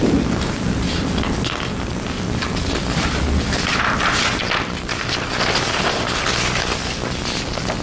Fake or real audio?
real